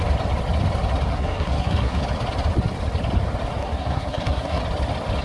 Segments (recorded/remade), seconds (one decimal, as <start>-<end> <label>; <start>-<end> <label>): 0.0-1.1 recorded; 1.1-2.0 remade; 2.0-3.6 recorded; 3.6-4.6 remade; 4.6-5.2 recorded